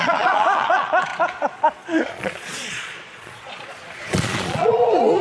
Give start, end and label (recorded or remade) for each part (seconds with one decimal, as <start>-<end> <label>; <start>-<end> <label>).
0.0-5.2 remade